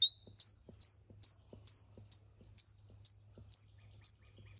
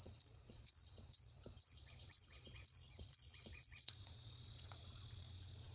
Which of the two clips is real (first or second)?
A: first